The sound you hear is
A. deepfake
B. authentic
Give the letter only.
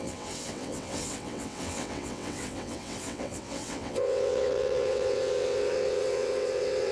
A